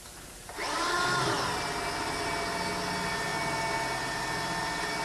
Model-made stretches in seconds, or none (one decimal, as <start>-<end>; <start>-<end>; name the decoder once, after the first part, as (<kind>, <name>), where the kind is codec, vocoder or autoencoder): 0.4-1.5 (vocoder, BigVGAN v2)